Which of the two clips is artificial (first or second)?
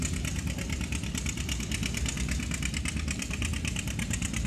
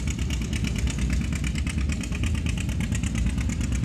first